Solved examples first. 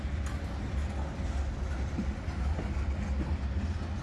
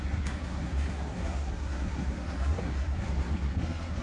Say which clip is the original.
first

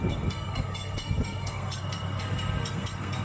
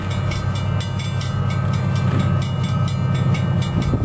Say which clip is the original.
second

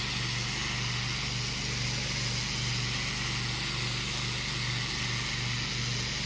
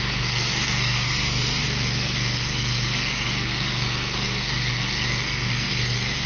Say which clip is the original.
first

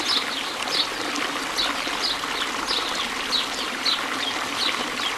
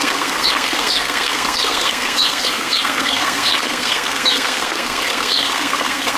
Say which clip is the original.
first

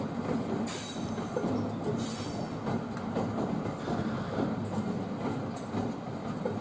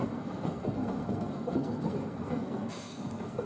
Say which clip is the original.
first